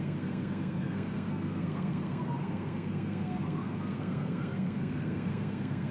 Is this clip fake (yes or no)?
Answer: yes